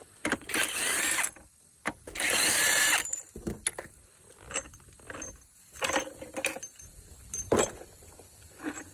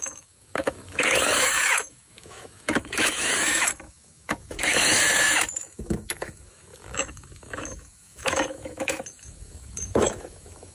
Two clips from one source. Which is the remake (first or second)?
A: second